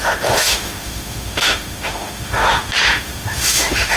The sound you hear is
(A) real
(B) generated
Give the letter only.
B